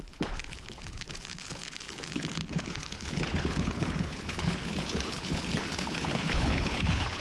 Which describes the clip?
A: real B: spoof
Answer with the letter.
B